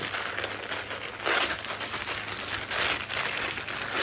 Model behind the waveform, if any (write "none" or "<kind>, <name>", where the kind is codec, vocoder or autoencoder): none